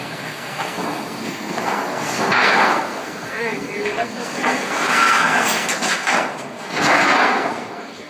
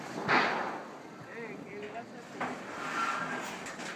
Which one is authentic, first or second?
second